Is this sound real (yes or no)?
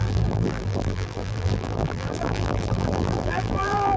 no